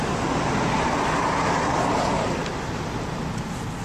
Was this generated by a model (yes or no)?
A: no